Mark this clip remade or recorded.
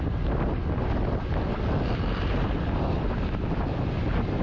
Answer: recorded